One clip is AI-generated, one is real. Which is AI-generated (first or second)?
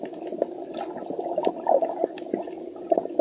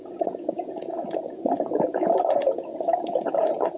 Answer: second